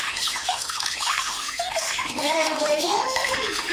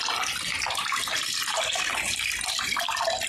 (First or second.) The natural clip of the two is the second